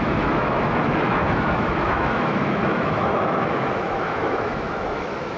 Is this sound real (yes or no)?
no